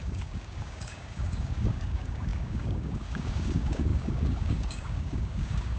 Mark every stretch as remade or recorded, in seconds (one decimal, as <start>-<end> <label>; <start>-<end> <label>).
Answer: 0.0-5.8 remade